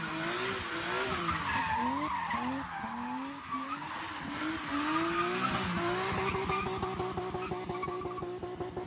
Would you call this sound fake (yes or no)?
no